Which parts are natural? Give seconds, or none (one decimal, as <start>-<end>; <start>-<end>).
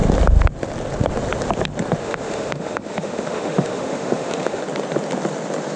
0.0-2.0; 4.6-5.8